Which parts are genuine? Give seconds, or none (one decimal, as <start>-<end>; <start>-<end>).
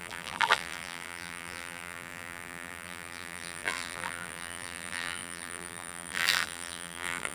none